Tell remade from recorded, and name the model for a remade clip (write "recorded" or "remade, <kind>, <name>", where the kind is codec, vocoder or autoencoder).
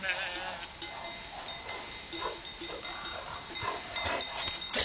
recorded